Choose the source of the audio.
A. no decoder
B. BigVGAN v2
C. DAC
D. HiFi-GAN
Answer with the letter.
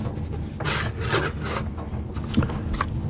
A